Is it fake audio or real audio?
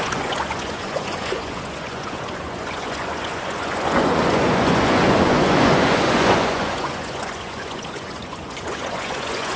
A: fake